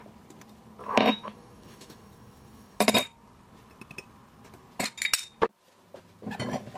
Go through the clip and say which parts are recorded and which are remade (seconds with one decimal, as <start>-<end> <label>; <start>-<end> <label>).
0.0-0.8 recorded; 0.8-2.8 remade; 2.8-6.8 recorded